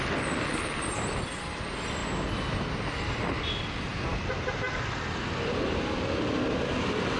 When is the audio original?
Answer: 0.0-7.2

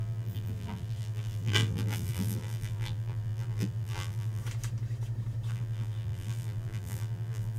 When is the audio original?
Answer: 4.4-5.5

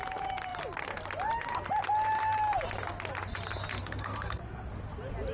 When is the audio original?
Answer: 0.0-3.8; 4.7-5.3

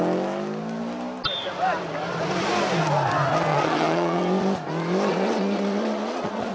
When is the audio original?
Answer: 0.0-3.5; 4.2-5.1

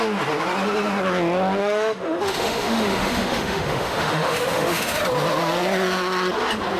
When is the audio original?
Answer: 0.0-1.6; 5.0-6.8